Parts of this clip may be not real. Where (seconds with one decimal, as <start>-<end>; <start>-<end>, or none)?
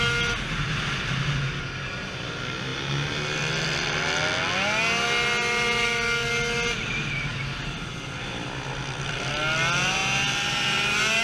none